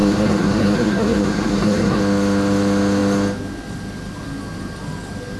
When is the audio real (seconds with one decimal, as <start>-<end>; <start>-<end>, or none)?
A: 2.0-5.4